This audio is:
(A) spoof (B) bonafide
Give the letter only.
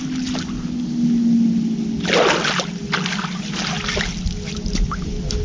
B